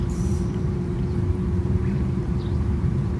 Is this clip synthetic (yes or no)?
yes